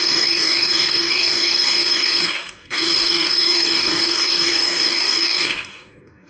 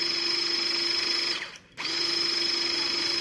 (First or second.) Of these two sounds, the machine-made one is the first